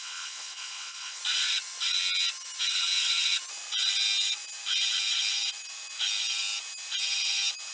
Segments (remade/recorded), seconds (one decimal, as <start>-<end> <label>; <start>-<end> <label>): 0.0-1.2 remade; 1.2-7.7 recorded